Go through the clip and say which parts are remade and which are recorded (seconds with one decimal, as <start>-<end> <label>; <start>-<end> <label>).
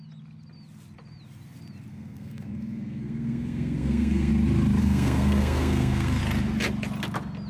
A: 0.0-1.9 recorded; 1.9-4.3 remade; 4.3-4.8 recorded; 4.8-6.2 remade; 6.2-7.5 recorded